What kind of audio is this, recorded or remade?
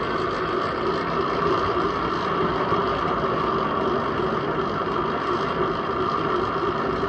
remade